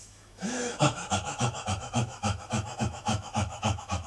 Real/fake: fake